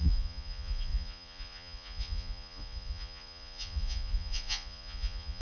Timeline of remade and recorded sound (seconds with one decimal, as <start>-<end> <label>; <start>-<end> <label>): 0.0-5.4 remade